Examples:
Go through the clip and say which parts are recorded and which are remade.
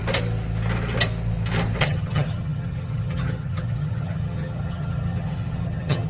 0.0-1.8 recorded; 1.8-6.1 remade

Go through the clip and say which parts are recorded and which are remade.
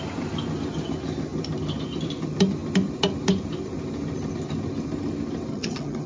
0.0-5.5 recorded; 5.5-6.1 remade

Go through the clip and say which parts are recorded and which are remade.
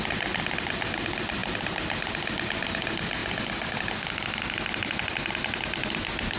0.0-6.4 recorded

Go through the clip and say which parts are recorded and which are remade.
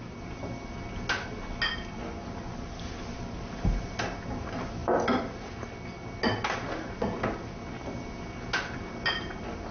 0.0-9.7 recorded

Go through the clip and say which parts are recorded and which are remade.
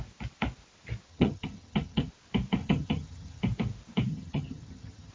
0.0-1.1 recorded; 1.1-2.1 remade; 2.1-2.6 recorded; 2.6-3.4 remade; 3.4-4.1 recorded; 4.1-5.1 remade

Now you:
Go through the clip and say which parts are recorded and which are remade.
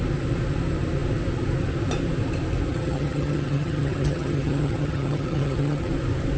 0.0-2.7 recorded; 2.7-5.9 remade; 5.9-6.4 recorded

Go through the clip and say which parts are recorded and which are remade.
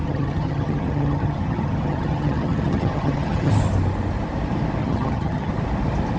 0.0-3.5 remade; 3.5-4.8 recorded; 4.8-5.5 remade; 5.5-6.2 recorded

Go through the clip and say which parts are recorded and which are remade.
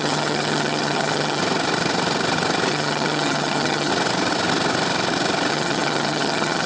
0.0-1.4 remade; 1.4-2.7 recorded; 2.7-3.9 remade; 3.9-5.5 recorded; 5.5-6.7 remade